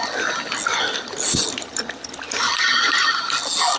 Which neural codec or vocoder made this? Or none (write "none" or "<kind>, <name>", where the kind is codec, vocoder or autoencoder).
none